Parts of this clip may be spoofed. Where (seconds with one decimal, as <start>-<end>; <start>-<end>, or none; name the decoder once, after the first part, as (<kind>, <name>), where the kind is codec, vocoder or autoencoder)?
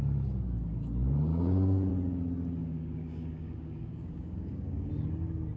1.3-1.9 (codec, DAC); 2.6-4.9